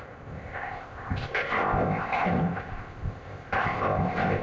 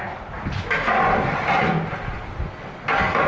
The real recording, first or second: second